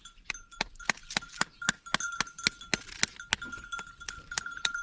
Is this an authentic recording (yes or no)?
yes